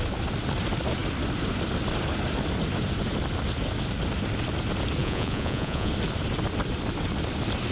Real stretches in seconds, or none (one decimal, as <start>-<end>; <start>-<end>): 0.0-5.0; 5.9-7.7